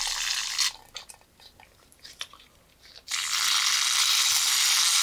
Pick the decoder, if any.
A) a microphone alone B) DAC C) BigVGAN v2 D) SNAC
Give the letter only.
A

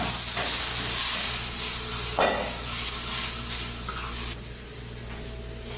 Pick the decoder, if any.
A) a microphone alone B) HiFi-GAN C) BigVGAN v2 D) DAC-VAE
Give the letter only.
A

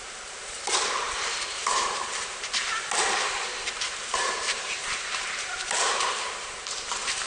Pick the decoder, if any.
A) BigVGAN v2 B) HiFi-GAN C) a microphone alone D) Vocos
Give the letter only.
A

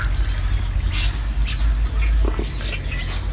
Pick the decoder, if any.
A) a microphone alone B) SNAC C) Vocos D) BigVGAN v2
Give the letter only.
A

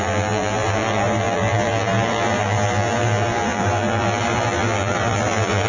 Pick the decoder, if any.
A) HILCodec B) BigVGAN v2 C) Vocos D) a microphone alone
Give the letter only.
B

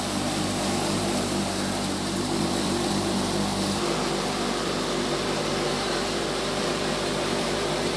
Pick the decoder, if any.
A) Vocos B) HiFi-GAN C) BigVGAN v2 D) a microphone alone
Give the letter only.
C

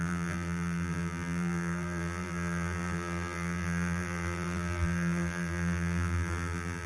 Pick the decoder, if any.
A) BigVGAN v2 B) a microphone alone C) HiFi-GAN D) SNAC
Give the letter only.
A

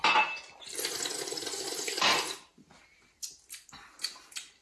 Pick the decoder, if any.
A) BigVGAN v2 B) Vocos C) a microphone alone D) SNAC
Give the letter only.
C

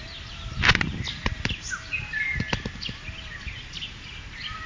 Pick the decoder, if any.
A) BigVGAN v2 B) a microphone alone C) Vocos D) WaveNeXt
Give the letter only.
B